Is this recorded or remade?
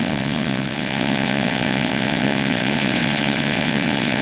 remade